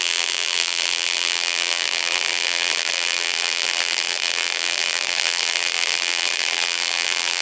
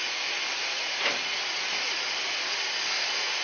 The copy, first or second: first